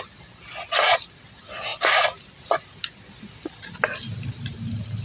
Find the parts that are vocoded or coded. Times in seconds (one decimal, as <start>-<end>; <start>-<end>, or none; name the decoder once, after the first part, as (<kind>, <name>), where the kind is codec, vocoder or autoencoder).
none